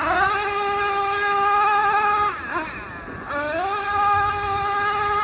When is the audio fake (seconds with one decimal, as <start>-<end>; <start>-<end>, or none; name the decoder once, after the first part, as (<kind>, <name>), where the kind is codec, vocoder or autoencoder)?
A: none